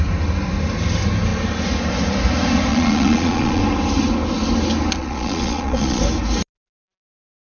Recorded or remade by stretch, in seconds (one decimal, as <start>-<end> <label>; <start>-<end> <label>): 0.0-2.7 recorded; 2.7-3.6 remade; 3.6-5.0 recorded; 5.0-6.0 remade; 6.0-7.6 recorded